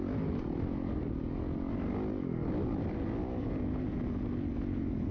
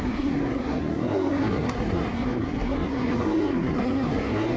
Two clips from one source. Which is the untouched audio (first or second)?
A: first